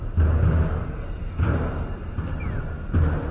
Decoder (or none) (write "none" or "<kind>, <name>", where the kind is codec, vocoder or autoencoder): none